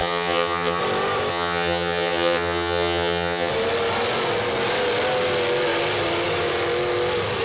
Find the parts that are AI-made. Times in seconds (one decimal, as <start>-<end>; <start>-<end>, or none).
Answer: 0.0-0.8; 1.3-3.5